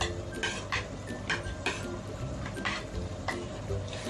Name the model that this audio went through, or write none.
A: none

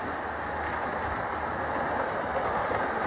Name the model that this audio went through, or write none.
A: none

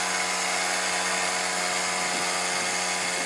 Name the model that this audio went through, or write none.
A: none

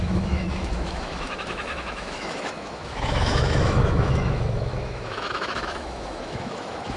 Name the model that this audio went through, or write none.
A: autoencoder, DAC-VAE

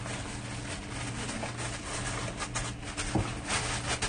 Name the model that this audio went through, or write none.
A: none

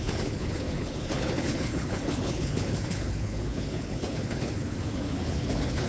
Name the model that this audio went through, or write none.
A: codec, HILCodec